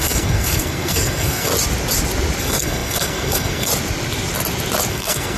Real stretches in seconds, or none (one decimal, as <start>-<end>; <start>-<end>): 1.5-2.4; 3.7-4.9